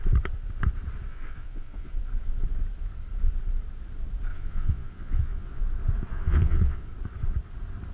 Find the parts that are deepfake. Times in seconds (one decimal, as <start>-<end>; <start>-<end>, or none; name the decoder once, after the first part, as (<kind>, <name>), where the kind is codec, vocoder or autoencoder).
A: 1.1-2.0 (vocoder, Vocos); 4.3-5.6; 6.1-6.9